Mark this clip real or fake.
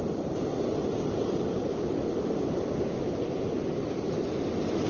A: real